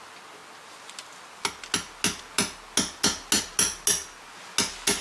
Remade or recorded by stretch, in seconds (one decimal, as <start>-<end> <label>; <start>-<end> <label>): 0.0-5.0 recorded